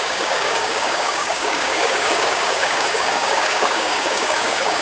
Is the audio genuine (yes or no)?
no